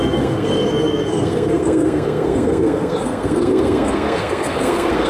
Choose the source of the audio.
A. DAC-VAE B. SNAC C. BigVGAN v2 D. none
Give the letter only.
B